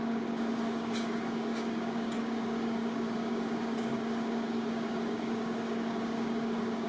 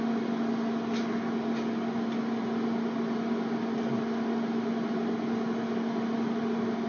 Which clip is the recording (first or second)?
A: second